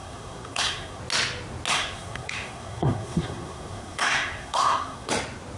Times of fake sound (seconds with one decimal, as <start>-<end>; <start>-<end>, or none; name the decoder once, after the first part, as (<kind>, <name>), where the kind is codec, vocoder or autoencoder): 0.0-1.0 (codec, SNAC); 1.7-5.1